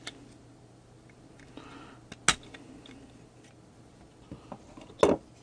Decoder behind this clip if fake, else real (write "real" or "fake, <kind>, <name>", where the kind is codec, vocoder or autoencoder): real